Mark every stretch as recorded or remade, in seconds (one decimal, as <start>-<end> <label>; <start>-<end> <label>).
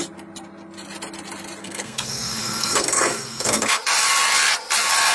0.0-1.6 recorded; 1.6-3.8 remade; 3.8-5.1 recorded